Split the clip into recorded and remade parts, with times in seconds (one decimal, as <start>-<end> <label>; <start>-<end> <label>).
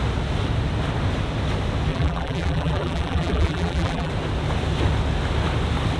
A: 0.0-1.9 recorded; 1.9-4.1 remade; 4.1-6.0 recorded